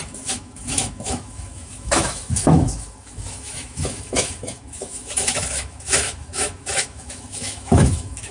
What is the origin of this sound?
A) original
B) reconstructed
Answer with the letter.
B